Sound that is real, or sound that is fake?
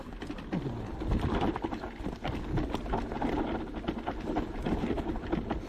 real